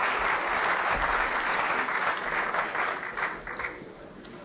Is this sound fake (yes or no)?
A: no